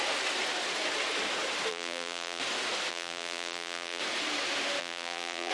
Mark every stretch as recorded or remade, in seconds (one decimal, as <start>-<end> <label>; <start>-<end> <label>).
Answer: 0.0-1.7 recorded; 1.7-2.4 remade; 2.4-2.9 recorded; 2.9-4.0 remade; 4.0-4.8 recorded; 4.8-5.5 remade